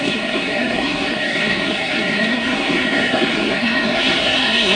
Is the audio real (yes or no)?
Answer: no